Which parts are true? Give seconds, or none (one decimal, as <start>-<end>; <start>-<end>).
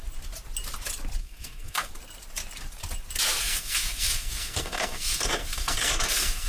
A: 0.0-1.2; 1.9-3.4